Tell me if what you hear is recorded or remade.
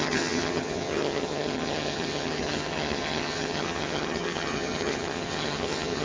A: remade